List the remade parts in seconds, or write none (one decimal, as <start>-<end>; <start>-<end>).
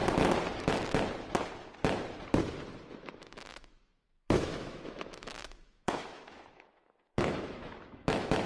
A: 2.8-8.5